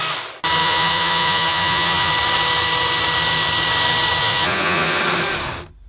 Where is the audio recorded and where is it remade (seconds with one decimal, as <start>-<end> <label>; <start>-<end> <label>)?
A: 0.0-0.6 recorded; 0.6-2.1 remade; 2.1-4.2 recorded; 4.2-5.0 remade; 5.0-5.9 recorded